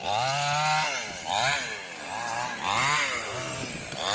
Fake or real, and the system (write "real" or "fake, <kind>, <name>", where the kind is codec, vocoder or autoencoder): real